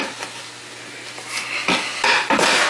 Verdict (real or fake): real